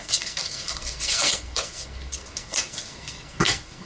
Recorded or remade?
remade